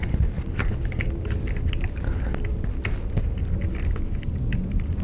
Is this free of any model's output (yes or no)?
yes